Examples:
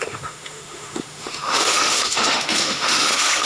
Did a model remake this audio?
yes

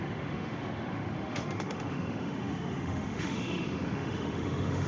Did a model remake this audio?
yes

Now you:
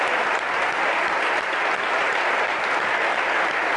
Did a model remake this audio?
no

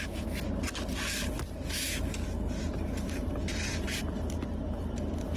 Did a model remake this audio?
no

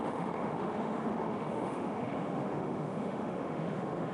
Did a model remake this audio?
yes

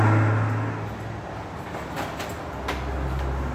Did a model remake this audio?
no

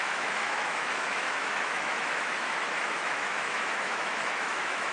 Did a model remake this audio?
yes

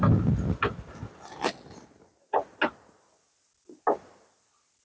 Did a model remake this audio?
no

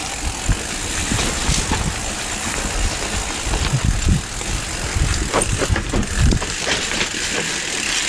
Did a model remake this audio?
no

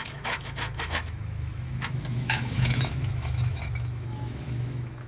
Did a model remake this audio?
yes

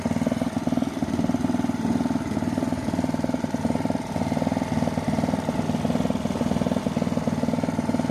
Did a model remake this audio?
no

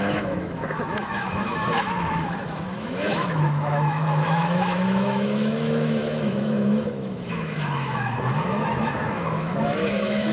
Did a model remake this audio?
yes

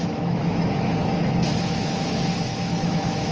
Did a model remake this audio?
yes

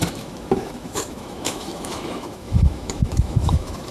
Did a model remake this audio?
yes